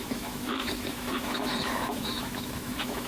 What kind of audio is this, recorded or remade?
remade